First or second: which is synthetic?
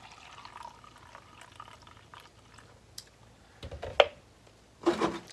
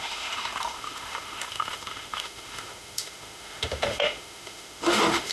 second